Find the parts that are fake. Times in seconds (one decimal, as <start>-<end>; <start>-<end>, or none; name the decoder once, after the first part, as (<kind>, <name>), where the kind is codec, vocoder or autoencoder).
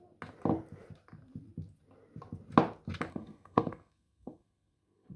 3.1-5.2 (codec, SNAC)